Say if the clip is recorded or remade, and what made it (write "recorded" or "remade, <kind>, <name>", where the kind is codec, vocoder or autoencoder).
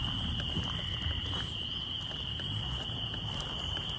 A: recorded